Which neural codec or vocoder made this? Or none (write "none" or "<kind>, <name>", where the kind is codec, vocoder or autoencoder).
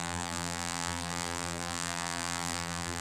vocoder, BigVGAN v2